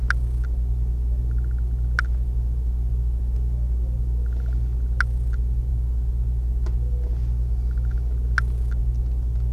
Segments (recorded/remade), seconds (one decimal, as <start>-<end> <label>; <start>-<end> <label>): 0.0-9.5 recorded